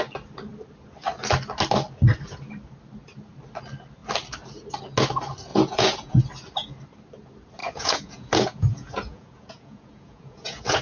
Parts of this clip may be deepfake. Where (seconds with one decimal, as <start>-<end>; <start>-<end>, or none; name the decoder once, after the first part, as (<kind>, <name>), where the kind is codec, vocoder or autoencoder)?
5.5-6.2 (vocoder, Vocos); 7.6-10.8